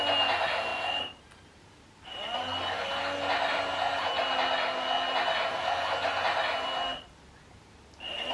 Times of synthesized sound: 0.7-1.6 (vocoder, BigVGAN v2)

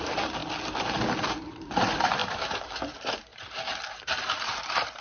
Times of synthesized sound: 0.0-0.4 (vocoder, BigVGAN v2); 1.2-5.0

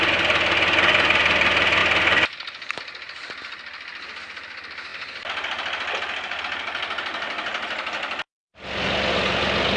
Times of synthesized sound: none